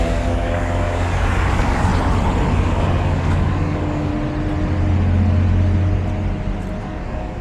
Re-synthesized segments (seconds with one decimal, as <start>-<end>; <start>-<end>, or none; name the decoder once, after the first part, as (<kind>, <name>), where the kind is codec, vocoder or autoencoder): 0.0-1.9 (codec, DAC); 2.5-4.1; 6.8-7.4